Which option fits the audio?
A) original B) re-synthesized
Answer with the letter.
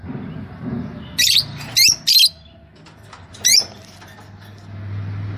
A